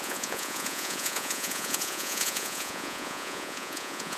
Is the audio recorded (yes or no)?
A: no